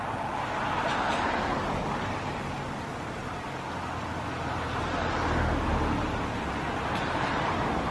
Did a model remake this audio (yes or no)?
no